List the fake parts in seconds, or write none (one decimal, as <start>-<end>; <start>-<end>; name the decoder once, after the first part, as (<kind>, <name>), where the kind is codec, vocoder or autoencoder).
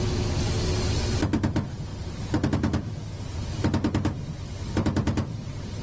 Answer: 5.0-5.8 (vocoder, BigVGAN v2)